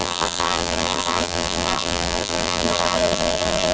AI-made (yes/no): yes